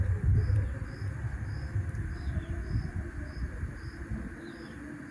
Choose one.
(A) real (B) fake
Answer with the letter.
A